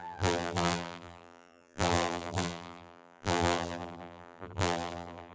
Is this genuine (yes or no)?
no